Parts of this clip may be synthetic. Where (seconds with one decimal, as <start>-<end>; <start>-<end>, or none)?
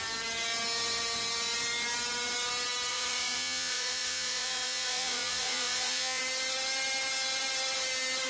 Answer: 2.9-6.2